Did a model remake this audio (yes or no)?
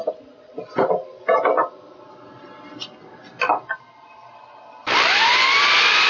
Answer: no